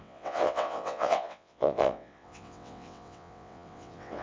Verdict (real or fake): fake